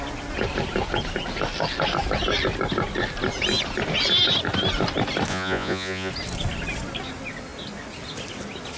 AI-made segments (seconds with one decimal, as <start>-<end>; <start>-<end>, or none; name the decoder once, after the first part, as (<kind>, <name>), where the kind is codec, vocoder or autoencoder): 5.3-6.1 (vocoder, Vocos)